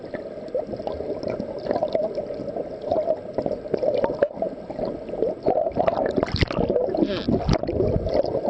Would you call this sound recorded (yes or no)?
yes